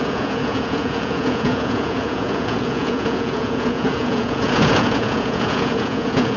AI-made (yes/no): yes